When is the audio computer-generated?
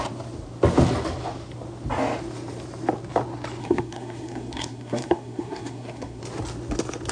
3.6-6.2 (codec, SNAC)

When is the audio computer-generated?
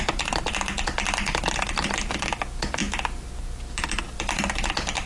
none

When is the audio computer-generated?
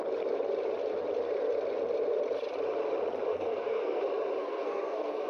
3.3-4.0 (codec, SNAC); 4.4-5.3